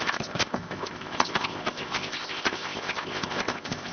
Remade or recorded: remade